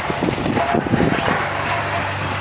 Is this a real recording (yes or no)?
no